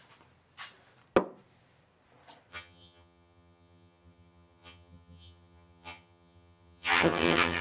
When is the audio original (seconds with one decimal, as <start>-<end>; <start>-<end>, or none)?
0.0-2.5

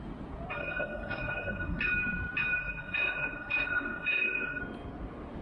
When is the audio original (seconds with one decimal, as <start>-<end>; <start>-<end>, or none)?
0.0-0.6; 1.8-2.6; 4.6-5.4

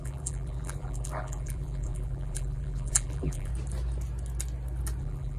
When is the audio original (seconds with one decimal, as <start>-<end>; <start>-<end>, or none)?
3.5-5.0